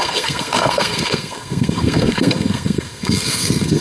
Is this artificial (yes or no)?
yes